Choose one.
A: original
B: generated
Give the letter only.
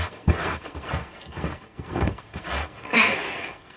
B